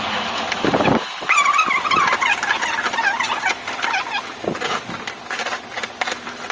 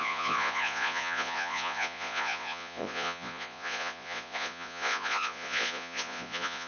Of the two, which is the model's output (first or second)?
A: second